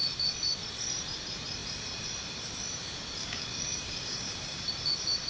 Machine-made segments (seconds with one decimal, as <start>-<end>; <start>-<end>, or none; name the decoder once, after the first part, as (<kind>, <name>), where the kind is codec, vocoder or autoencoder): 3.2-4.6 (codec, DAC)